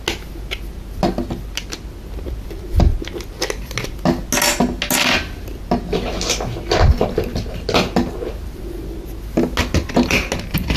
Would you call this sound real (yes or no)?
yes